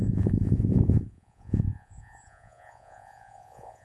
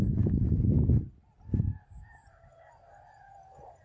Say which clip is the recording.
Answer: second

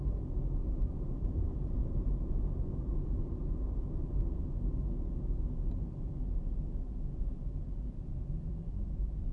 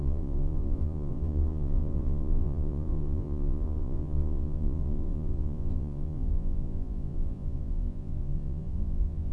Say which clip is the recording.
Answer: first